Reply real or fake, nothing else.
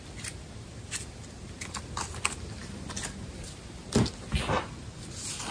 real